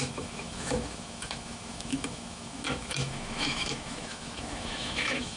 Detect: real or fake fake